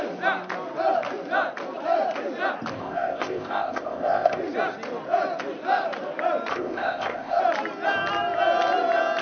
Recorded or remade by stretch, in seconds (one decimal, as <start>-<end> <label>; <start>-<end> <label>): 0.0-2.8 recorded; 2.8-4.4 remade; 4.4-6.5 recorded; 6.5-7.4 remade; 7.4-9.2 recorded